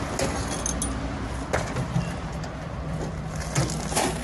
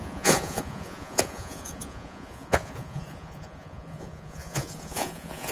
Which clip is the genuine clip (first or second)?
first